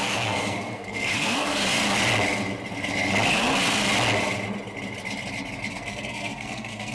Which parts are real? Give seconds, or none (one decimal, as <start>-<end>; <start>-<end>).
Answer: 1.6-5.7